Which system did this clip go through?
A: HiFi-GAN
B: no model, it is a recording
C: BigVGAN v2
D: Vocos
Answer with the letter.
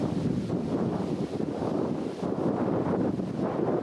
B